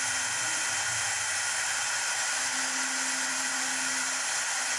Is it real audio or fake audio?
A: real